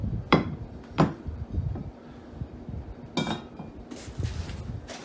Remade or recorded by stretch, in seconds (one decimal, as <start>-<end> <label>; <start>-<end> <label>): 0.0-1.8 remade; 1.8-5.0 recorded